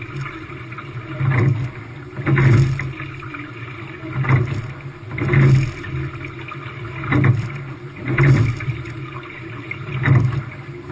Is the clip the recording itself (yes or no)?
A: yes